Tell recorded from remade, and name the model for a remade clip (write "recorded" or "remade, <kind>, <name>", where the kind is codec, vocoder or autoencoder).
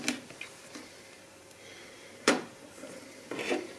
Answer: recorded